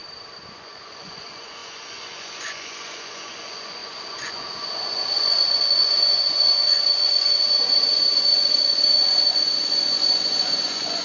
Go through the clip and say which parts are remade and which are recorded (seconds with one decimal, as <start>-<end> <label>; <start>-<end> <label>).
0.0-0.5 recorded; 0.5-11.0 remade